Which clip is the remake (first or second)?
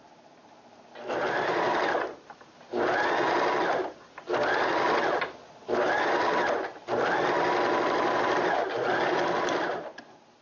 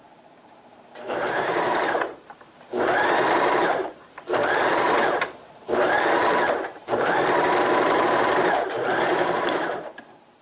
second